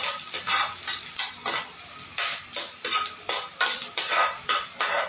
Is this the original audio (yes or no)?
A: yes